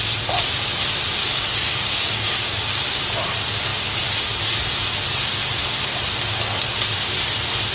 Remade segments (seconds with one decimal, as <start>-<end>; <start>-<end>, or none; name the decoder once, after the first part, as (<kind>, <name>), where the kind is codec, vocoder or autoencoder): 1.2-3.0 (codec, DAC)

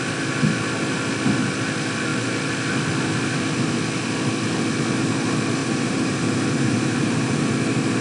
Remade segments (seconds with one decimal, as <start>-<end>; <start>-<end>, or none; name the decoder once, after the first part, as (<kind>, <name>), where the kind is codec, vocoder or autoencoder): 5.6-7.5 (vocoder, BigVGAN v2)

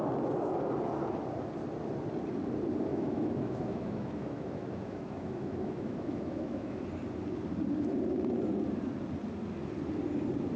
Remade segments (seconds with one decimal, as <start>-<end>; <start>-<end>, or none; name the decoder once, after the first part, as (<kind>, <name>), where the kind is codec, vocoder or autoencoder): 2.9-6.8 (autoencoder, DAC-VAE)

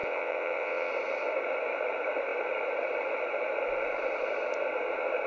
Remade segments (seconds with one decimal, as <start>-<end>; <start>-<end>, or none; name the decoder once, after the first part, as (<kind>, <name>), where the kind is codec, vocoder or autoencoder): 0.0-0.9 (vocoder, WaveNeXt)

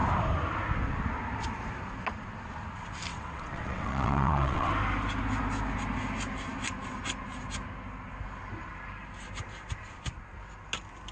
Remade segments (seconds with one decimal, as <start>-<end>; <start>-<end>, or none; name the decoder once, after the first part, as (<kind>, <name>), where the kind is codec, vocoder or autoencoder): 3.1-4.7 (vocoder, WaveNeXt)